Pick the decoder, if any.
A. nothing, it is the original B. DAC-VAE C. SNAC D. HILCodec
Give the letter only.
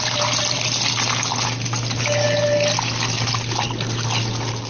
A